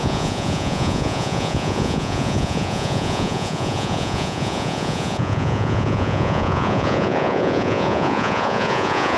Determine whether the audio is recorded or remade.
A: remade